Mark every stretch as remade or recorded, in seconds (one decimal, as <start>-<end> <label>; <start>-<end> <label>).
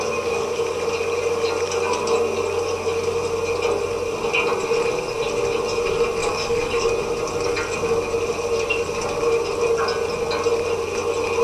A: 0.0-6.2 recorded; 6.2-6.9 remade; 6.9-11.4 recorded